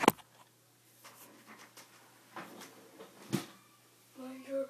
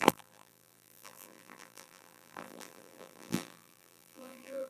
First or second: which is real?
first